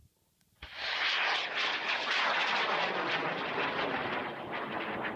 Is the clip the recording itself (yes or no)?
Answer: yes